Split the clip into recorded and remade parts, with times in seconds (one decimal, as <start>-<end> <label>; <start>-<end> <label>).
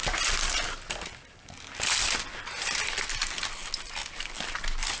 0.0-5.0 recorded